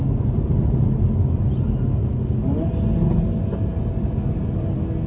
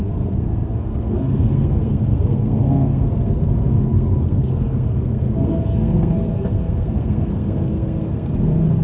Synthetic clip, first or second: second